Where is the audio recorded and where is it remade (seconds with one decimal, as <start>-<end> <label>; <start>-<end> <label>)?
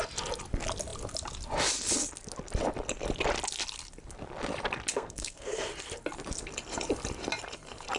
0.0-4.9 recorded; 4.9-5.7 remade; 5.7-8.0 recorded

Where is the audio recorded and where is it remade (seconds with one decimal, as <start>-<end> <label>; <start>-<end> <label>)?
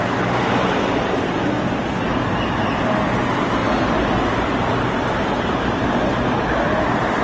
0.0-3.6 recorded; 3.6-7.2 remade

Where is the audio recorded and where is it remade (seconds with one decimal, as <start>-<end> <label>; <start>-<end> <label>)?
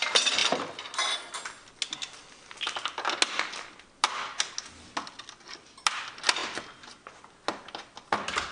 0.0-8.5 recorded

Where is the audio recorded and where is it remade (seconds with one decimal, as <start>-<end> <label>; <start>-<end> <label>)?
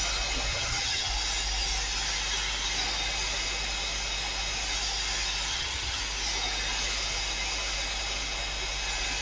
0.0-0.5 recorded; 0.5-1.1 remade; 1.1-5.5 recorded; 5.5-6.0 remade; 6.0-9.2 recorded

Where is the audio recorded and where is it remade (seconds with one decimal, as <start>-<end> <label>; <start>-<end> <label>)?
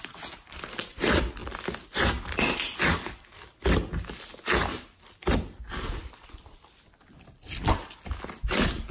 0.0-8.9 recorded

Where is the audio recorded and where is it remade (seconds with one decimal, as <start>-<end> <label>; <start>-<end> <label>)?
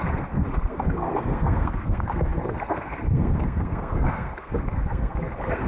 0.0-5.7 remade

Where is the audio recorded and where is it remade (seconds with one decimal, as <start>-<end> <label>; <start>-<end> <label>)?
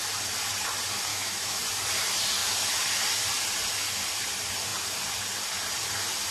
0.0-1.1 recorded; 1.1-1.6 remade; 1.6-6.3 recorded